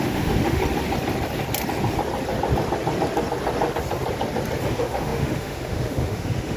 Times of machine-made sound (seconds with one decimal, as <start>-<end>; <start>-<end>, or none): 0.0-0.6; 4.6-6.6